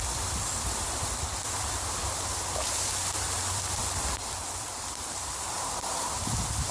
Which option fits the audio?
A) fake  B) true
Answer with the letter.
A